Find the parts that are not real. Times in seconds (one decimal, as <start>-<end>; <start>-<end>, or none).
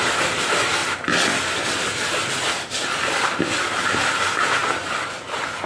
none